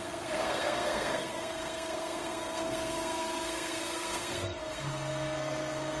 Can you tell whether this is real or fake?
fake